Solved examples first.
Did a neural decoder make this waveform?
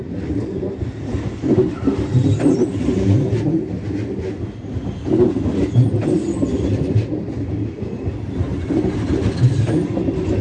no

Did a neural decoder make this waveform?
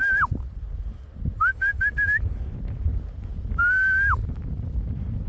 no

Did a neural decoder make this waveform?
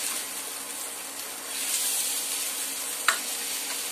no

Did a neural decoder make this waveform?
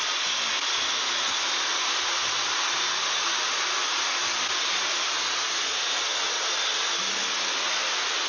no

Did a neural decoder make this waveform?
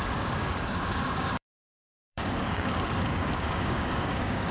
yes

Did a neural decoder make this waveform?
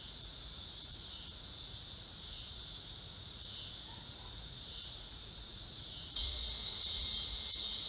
yes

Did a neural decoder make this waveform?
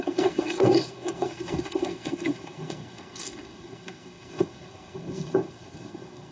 yes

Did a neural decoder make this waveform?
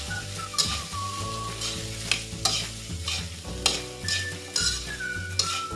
no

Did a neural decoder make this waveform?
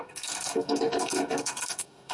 yes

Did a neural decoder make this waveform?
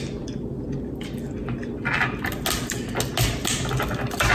no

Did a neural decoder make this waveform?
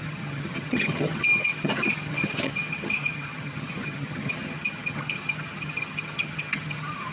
yes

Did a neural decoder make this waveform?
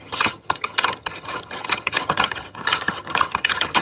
yes